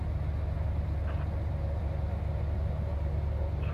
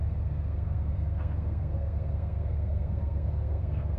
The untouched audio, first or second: first